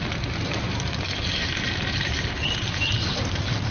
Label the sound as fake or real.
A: fake